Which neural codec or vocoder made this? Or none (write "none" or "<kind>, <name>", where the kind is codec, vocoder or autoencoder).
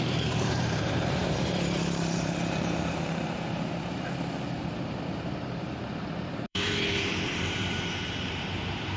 vocoder, BigVGAN v2